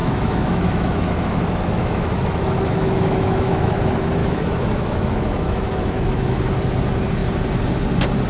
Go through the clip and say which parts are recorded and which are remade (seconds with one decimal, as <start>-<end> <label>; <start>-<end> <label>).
0.0-3.8 remade; 3.8-4.2 recorded; 4.2-6.4 remade; 6.4-8.3 recorded